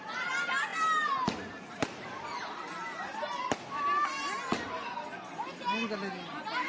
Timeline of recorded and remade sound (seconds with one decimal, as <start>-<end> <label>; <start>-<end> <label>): 0.0-6.7 recorded